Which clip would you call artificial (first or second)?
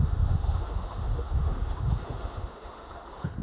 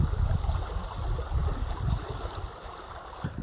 first